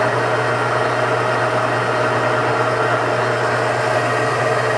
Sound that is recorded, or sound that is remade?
recorded